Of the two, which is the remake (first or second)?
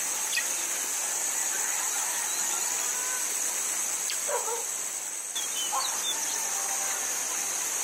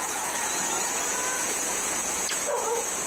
second